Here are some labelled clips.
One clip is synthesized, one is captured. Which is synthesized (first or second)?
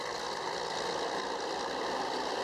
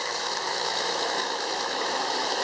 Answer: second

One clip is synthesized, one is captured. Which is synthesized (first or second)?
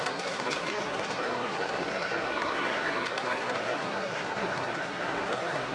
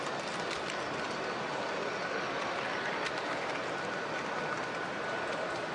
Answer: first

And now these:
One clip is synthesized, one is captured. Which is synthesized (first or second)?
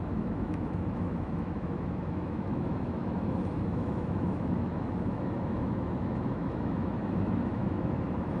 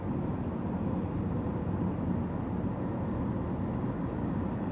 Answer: first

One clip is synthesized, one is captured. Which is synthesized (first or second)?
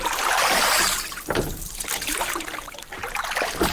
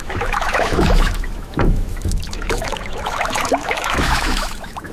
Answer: second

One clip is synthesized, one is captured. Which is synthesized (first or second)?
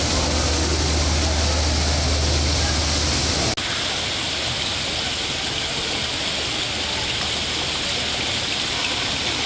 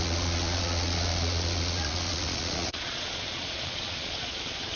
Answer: second